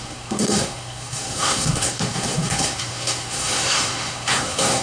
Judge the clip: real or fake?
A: fake